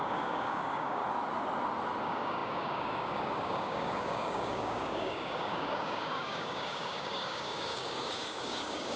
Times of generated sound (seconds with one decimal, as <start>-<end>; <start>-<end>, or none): 0.0-1.0; 2.0-9.0